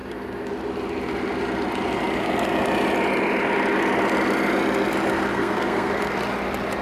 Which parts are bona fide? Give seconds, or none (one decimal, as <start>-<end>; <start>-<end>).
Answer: 0.0-5.3; 5.9-6.8